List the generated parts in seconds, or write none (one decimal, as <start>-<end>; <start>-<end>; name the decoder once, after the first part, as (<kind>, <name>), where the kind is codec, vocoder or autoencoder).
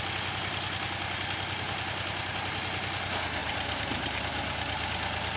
3.4-4.2 (vocoder, BigVGAN v2)